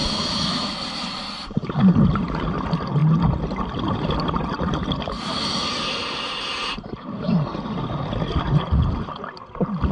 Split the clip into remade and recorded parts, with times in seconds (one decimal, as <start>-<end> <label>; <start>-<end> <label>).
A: 0.0-0.7 remade; 0.7-9.9 recorded